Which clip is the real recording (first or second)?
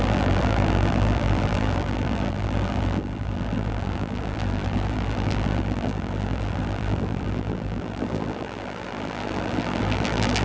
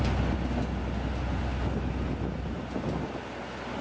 second